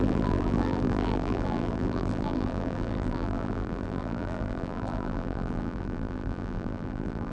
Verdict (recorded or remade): remade